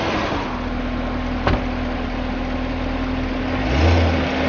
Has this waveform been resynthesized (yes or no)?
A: no